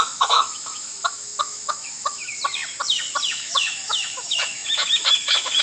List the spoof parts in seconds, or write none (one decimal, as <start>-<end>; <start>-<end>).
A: 0.0-2.3; 3.3-5.6